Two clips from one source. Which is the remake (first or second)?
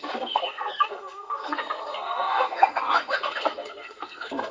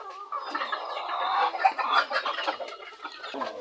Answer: first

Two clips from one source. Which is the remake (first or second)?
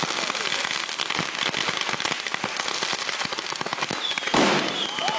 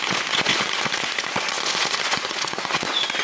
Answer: second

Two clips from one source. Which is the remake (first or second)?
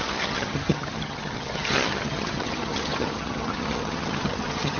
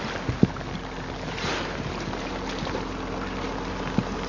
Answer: first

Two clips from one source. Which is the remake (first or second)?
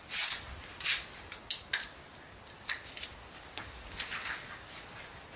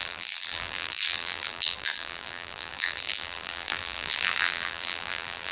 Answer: second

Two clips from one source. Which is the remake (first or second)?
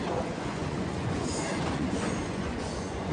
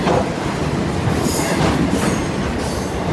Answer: first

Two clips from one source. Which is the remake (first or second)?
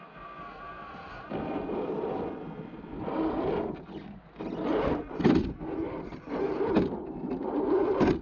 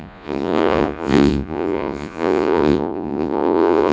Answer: second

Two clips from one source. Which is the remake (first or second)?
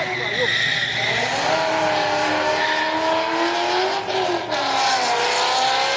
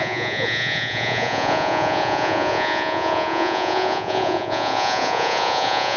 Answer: second